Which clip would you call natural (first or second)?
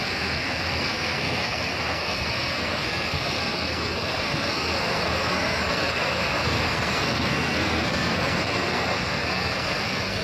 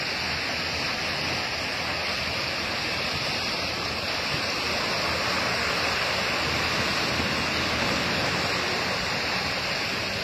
second